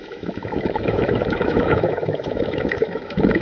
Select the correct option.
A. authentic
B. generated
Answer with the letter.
B